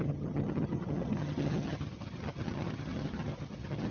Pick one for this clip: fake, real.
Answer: fake